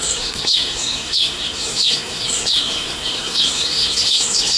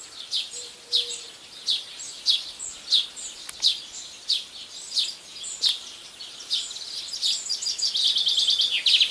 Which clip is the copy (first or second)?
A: first